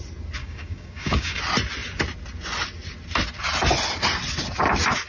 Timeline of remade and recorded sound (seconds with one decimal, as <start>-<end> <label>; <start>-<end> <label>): 0.0-0.4 recorded; 0.4-1.4 remade; 1.4-5.1 recorded